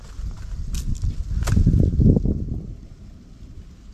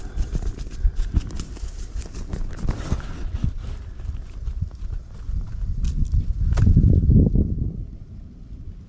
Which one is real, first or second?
first